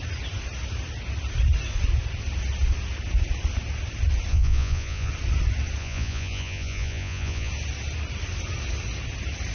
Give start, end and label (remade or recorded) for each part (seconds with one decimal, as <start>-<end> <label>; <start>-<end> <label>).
0.0-4.3 recorded; 4.3-5.1 remade; 5.1-5.8 recorded; 5.8-7.5 remade; 7.5-9.5 recorded